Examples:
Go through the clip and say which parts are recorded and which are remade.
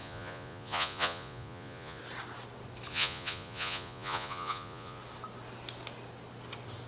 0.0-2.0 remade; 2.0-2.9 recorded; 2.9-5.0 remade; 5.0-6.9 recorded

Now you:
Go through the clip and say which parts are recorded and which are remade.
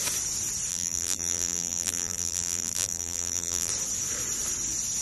0.0-0.7 recorded; 0.7-3.7 remade; 3.7-5.0 recorded